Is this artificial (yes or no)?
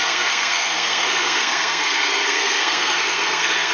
yes